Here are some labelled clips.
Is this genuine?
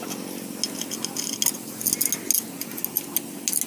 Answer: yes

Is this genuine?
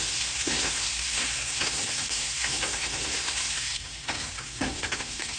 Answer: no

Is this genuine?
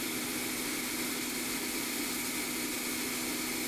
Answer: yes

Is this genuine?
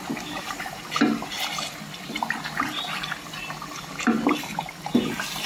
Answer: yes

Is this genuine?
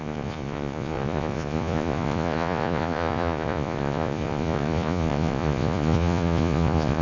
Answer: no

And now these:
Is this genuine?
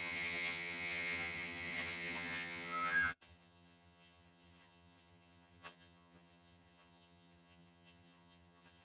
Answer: no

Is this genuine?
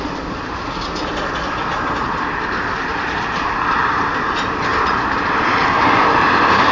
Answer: yes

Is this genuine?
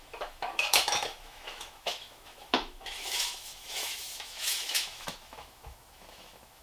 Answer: no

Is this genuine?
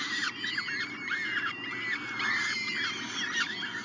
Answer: yes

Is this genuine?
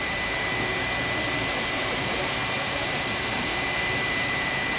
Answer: no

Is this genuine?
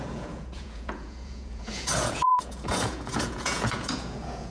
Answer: no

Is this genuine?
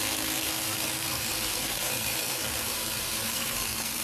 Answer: no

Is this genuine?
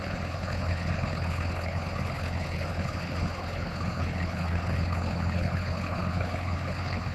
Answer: no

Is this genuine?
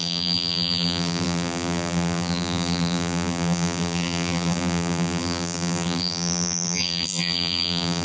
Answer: no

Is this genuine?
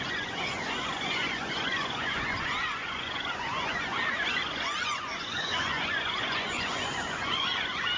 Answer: no